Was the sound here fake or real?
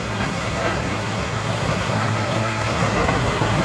fake